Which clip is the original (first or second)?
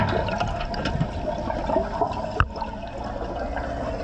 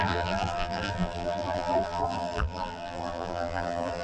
first